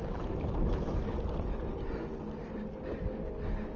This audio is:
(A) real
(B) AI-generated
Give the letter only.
A